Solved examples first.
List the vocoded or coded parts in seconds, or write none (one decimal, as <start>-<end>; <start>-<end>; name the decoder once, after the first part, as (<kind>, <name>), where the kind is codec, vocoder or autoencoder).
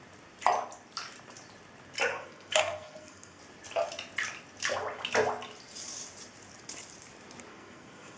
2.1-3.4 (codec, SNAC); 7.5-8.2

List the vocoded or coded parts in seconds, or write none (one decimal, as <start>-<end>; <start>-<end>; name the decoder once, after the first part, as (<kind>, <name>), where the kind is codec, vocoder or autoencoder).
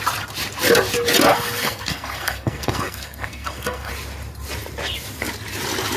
1.3-3.9 (codec, SNAC)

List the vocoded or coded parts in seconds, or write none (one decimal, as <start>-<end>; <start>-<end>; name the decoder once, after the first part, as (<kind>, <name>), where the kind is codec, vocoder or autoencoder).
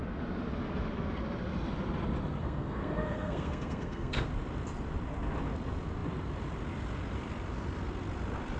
2.4-4.3 (codec, SNAC)